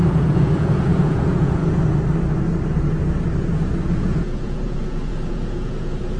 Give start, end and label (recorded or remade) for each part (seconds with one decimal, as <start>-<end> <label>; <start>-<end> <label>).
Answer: 0.0-1.6 remade; 1.6-3.9 recorded; 3.9-6.2 remade

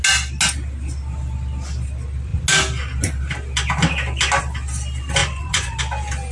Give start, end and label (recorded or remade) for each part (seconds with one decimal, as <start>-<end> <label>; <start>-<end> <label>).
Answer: 0.0-5.2 recorded; 5.2-5.8 remade; 5.8-6.3 recorded

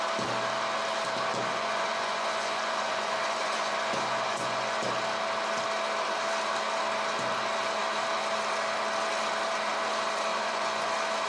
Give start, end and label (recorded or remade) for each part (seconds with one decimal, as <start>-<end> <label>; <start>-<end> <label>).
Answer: 0.0-1.4 recorded; 1.4-4.8 remade; 4.8-10.3 recorded; 10.3-10.9 remade; 10.9-11.3 recorded

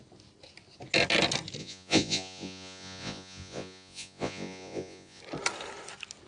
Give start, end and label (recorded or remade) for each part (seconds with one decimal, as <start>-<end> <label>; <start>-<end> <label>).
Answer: 0.0-1.6 recorded; 1.6-5.2 remade; 5.2-6.3 recorded

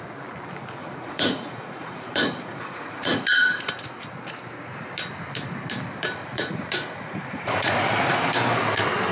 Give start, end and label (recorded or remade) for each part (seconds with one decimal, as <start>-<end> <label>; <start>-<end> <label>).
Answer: 0.0-0.8 recorded; 0.8-3.7 remade; 3.7-6.2 recorded; 6.2-8.2 remade; 8.2-9.1 recorded

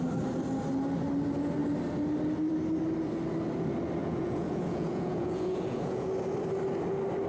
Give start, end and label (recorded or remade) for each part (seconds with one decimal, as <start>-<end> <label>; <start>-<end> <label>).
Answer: 0.0-4.0 recorded; 4.0-6.1 remade; 6.1-7.3 recorded

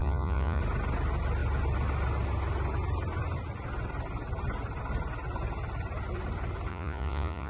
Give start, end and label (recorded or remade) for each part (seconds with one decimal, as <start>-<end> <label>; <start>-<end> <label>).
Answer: 0.0-0.6 remade; 0.6-6.7 recorded; 6.7-7.5 remade

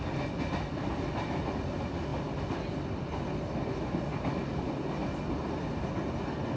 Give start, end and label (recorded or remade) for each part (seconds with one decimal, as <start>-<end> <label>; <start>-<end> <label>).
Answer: 0.0-6.6 recorded